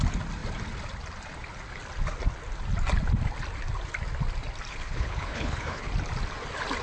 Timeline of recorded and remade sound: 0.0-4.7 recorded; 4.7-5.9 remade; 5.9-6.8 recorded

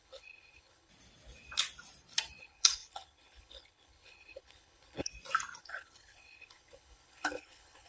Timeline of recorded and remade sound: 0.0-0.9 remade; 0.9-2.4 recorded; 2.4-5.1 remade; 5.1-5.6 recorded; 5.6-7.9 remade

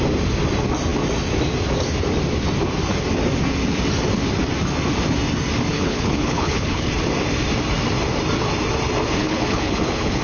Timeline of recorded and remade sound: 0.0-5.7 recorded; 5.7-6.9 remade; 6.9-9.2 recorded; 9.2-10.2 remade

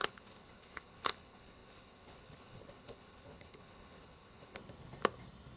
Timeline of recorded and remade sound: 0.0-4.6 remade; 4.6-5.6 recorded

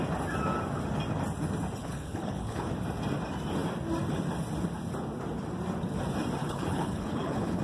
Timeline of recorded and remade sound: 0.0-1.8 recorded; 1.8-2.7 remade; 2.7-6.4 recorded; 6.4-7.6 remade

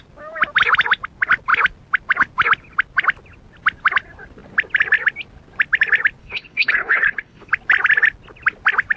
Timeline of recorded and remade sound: 0.0-6.2 recorded; 6.2-7.5 remade; 7.5-9.0 recorded

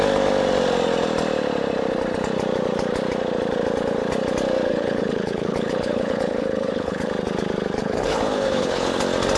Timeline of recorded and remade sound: 0.0-4.7 recorded; 4.7-7.1 remade; 7.1-7.8 recorded; 7.8-9.0 remade; 9.0-9.4 recorded

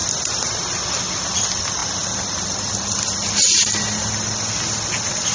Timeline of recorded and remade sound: 0.0-5.3 recorded